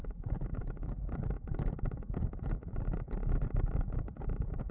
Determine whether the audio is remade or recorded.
remade